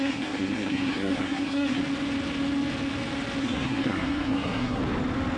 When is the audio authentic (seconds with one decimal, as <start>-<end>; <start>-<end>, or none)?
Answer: 1.8-3.4; 4.8-5.4